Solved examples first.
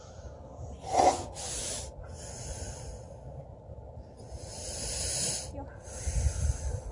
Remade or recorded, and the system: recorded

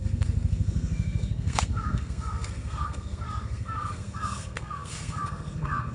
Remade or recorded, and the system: remade, codec, SNAC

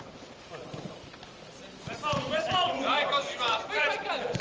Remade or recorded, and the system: recorded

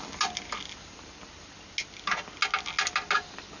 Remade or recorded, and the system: recorded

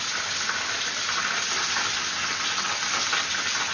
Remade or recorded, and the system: recorded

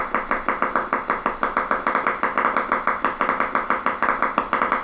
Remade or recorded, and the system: recorded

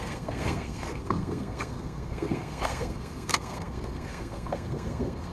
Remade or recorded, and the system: remade, codec, SNAC